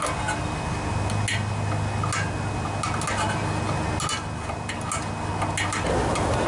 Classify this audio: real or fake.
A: real